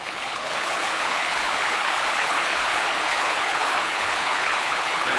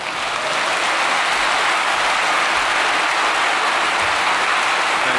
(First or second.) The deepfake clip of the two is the first